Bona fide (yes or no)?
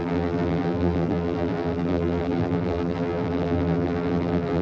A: no